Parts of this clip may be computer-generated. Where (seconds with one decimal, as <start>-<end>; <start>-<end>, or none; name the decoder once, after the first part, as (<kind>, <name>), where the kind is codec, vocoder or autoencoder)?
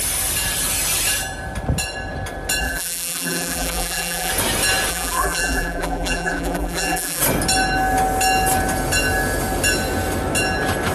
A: 2.6-4.3 (vocoder, BigVGAN v2); 4.9-7.2